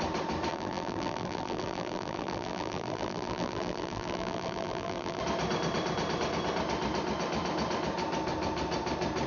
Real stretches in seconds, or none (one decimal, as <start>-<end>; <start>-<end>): 0.0-0.5; 5.2-9.3